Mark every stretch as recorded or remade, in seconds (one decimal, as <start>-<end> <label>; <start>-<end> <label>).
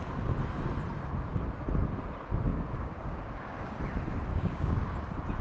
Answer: 0.0-2.5 recorded; 2.5-3.8 remade; 3.8-4.3 recorded; 4.3-4.9 remade; 4.9-5.4 recorded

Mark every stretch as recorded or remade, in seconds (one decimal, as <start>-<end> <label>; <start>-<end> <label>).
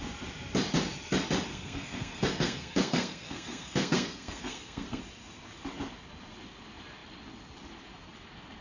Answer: 0.0-1.5 recorded; 1.5-5.0 remade; 5.0-8.6 recorded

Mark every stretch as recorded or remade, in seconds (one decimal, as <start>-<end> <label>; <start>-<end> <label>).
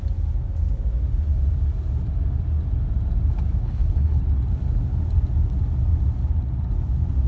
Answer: 0.0-3.6 recorded; 3.6-4.2 remade; 4.2-7.3 recorded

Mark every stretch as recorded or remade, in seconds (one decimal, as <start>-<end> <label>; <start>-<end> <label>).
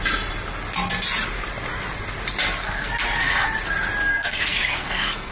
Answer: 0.0-2.6 recorded; 2.6-3.5 remade; 3.5-4.1 recorded; 4.1-5.3 remade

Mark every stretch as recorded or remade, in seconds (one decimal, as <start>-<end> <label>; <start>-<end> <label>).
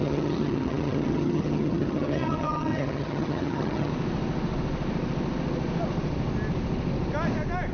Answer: 0.0-3.9 remade; 3.9-7.7 recorded